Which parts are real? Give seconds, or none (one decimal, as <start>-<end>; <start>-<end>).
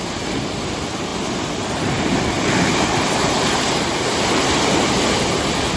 0.0-1.1; 4.6-5.8